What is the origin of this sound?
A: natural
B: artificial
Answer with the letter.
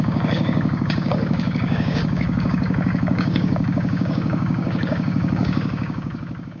B